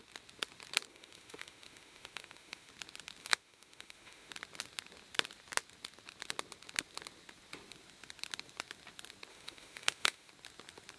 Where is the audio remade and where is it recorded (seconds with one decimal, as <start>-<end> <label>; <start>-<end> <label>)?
0.0-0.9 recorded; 0.9-2.7 remade; 2.7-3.2 recorded; 3.2-4.3 remade; 4.3-9.3 recorded; 9.3-10.3 remade; 10.3-11.0 recorded